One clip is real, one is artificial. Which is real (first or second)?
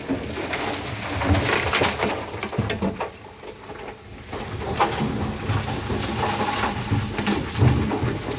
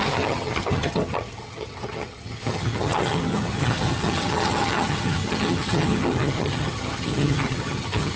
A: first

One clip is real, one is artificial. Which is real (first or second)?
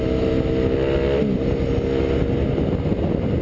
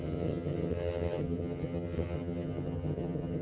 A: first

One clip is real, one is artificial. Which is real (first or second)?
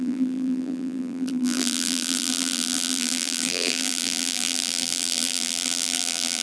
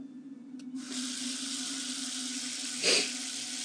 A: second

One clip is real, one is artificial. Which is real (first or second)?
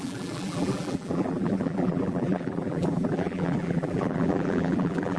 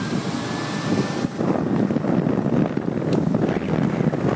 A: second